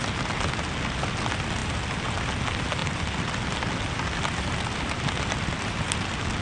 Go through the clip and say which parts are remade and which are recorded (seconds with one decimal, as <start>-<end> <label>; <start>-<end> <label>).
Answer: 0.0-6.4 recorded